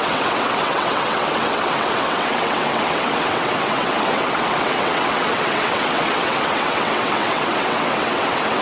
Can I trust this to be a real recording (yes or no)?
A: no